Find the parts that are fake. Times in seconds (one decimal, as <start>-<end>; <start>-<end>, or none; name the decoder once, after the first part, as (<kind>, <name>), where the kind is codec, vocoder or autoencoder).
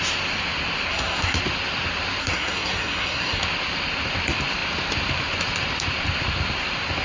0.9-1.4 (codec, SNAC); 2.2-3.4